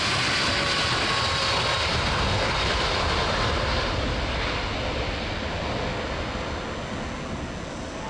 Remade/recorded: recorded